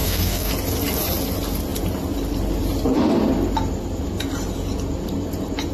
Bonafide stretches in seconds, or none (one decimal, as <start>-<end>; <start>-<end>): 0.5-5.7